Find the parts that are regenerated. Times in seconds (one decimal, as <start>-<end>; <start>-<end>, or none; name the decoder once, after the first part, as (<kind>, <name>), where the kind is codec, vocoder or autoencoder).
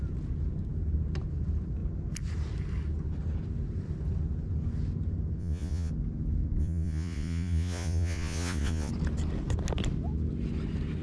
5.4-5.9 (vocoder, Vocos); 6.6-8.9